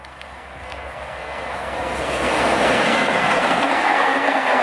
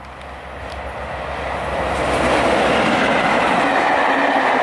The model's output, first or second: first